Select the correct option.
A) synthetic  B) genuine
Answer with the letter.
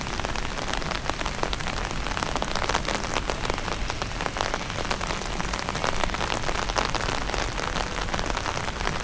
B